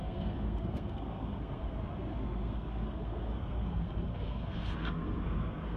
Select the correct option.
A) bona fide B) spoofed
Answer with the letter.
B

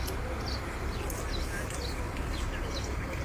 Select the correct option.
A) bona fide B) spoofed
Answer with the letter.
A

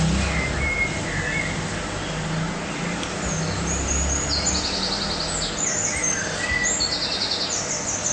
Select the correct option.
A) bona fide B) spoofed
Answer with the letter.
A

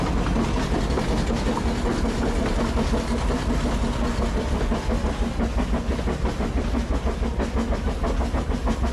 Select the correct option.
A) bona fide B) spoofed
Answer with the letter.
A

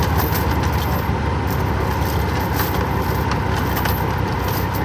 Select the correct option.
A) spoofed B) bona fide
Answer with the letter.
B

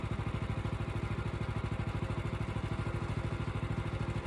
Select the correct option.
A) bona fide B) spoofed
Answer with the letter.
A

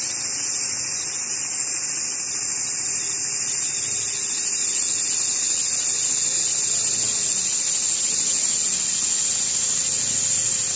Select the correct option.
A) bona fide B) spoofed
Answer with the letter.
A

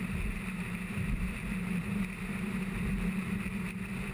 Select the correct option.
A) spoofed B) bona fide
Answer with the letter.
A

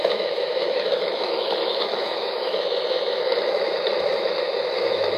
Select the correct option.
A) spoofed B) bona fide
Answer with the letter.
A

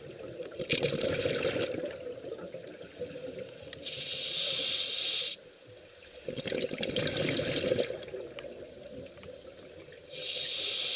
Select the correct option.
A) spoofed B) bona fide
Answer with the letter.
B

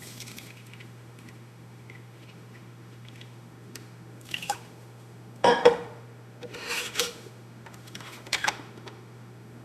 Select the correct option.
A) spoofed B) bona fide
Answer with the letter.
A